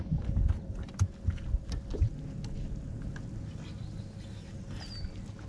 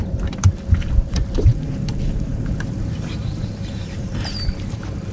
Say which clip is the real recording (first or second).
first